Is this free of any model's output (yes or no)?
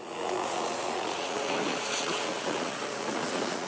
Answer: no